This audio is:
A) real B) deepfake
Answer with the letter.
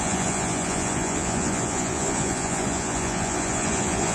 B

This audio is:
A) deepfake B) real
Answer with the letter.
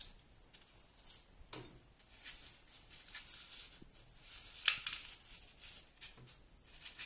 B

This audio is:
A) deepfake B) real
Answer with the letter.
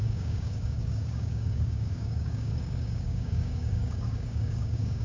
A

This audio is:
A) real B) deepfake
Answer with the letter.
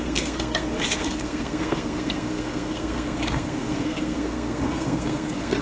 B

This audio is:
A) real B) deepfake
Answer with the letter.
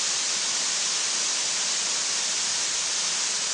A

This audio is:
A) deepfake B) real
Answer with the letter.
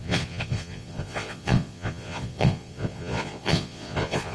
A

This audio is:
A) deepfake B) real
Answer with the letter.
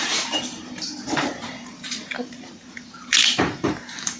A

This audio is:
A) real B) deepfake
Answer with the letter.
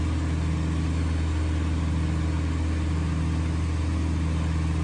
A